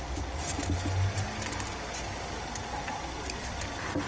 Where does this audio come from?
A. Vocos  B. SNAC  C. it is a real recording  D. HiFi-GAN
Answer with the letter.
C